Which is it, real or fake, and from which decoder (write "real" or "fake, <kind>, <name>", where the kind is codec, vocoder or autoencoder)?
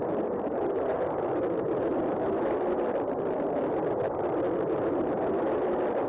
fake, vocoder, BigVGAN v2